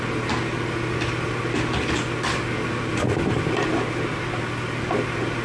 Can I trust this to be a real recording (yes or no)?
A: yes